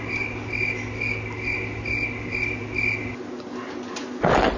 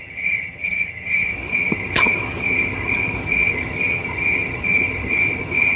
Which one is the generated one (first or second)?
second